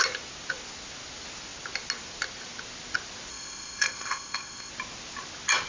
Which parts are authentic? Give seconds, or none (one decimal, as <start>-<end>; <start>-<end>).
0.0-3.3; 4.7-5.7